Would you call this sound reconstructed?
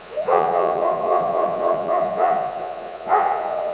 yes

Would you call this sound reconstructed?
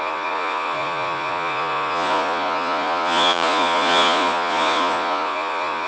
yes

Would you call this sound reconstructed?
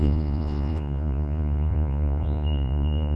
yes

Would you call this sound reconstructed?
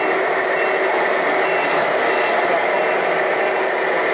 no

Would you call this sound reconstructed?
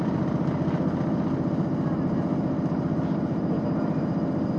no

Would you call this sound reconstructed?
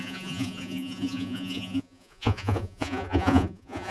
yes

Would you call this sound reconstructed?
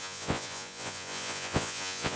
yes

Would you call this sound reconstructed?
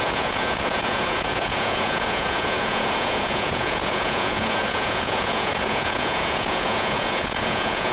yes